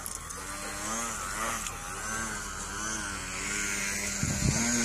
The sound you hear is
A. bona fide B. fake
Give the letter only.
A